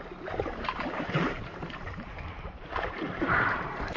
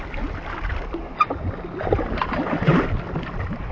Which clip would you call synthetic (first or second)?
first